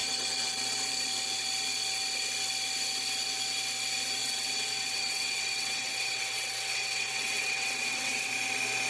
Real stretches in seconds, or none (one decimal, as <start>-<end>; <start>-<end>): 0.0-4.2; 8.3-8.9